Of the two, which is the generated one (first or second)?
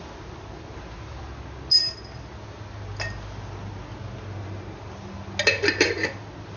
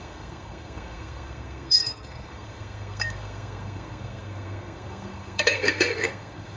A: second